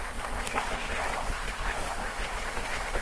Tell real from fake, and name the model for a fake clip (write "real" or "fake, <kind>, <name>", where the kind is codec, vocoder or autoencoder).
fake, codec, SNAC